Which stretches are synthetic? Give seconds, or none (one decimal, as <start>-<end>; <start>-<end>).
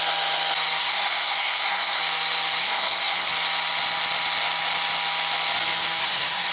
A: 0.8-2.0; 2.6-3.3; 6.0-6.5